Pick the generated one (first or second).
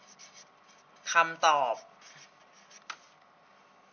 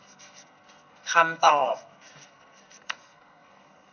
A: second